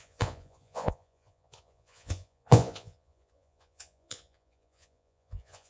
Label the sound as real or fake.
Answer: fake